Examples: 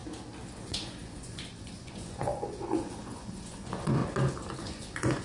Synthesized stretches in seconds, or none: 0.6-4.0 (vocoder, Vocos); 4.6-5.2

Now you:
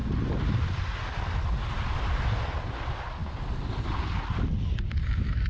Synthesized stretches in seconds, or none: none

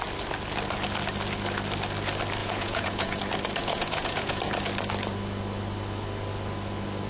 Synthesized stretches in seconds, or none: 2.4-3.2 (vocoder, Vocos); 3.6-4.4

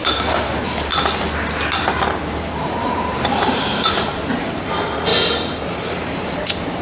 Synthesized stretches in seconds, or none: 0.0-0.9 (vocoder, BigVGAN v2); 2.1-5.1; 5.8-6.8